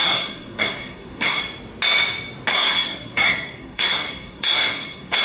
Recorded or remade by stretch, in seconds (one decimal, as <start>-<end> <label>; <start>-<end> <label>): 0.0-1.4 remade; 1.4-2.5 recorded; 2.5-5.2 remade